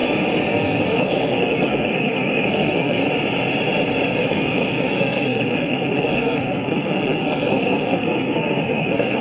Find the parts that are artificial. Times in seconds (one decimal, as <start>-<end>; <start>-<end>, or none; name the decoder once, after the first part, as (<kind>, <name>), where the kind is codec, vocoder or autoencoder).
0.5-3.0 (codec, SNAC); 4.2-9.2